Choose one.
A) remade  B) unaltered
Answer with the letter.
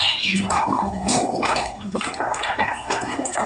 A